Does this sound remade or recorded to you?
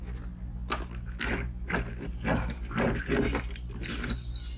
recorded